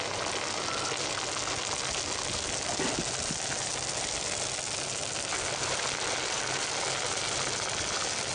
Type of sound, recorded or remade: recorded